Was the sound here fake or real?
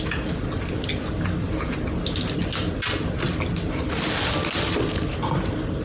real